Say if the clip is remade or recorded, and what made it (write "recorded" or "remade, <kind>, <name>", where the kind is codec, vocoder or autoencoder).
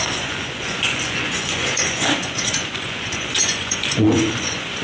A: remade, vocoder, Vocos